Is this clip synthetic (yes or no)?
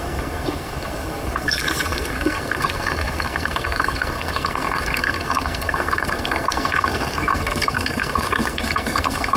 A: yes